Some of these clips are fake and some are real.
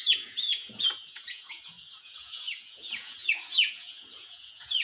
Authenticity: fake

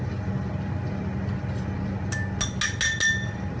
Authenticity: real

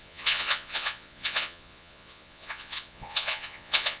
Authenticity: fake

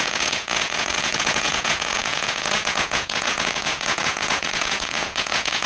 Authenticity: fake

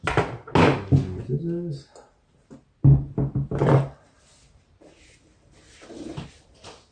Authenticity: real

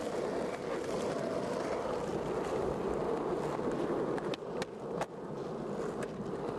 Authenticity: real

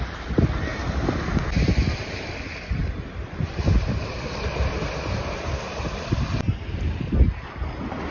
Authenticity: real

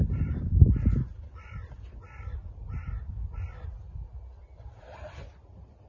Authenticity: real